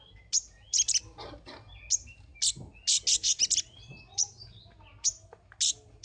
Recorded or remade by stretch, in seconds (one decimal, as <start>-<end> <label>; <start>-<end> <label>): 0.0-6.0 recorded